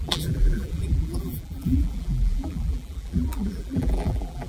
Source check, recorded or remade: remade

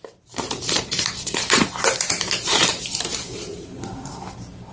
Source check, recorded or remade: remade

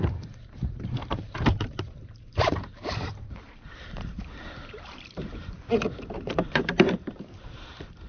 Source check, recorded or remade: remade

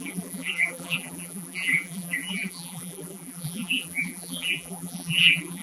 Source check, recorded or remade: remade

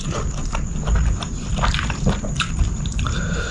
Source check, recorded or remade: remade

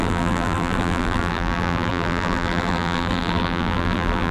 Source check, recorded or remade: remade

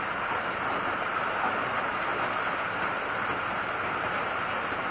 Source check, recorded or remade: recorded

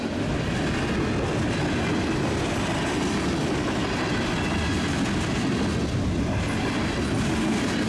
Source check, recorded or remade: recorded